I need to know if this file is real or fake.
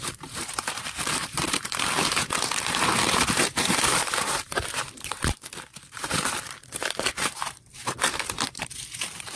fake